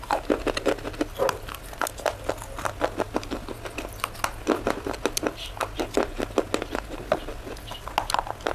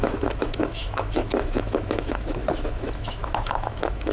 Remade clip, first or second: second